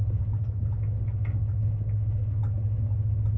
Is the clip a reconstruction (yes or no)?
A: no